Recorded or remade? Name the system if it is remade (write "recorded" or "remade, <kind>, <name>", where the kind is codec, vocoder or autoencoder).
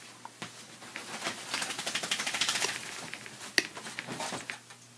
recorded